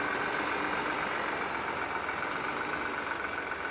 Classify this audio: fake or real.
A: real